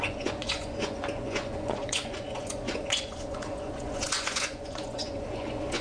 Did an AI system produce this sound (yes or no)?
yes